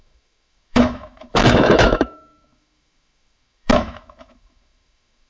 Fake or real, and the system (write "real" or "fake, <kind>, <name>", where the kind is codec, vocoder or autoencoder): fake, autoencoder, DAC-VAE